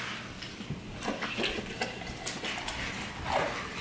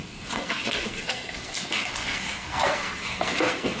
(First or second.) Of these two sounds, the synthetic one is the second